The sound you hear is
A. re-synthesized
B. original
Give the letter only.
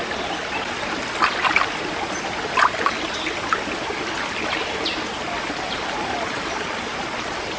B